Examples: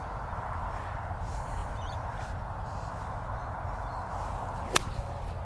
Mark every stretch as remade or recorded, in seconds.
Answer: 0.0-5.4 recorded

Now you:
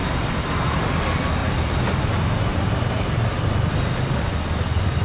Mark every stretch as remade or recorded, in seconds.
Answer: 0.0-0.5 remade; 0.5-1.4 recorded; 1.4-2.0 remade; 2.0-2.5 recorded; 2.5-4.3 remade; 4.3-5.0 recorded

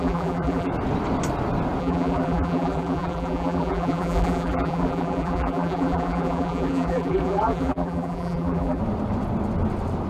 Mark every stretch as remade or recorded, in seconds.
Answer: 0.0-0.7 remade; 0.7-1.8 recorded; 1.8-8.8 remade; 8.8-10.1 recorded

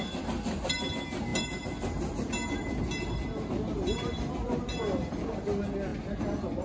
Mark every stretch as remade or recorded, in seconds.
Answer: 0.0-6.6 recorded